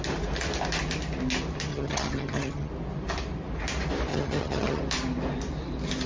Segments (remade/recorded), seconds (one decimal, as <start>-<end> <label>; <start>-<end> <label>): 0.0-1.7 recorded; 1.7-2.7 remade; 2.7-4.1 recorded; 4.1-4.8 remade; 4.8-6.1 recorded